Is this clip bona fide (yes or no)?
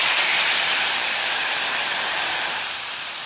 no